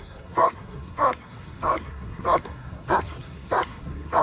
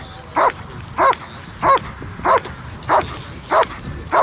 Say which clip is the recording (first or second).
second